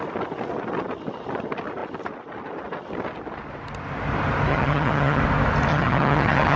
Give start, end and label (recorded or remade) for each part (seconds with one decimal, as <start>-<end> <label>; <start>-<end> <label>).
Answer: 0.0-4.5 recorded; 4.5-5.2 remade; 5.2-5.7 recorded; 5.7-6.6 remade